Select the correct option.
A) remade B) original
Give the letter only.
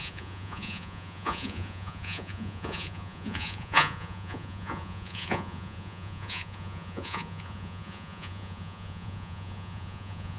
A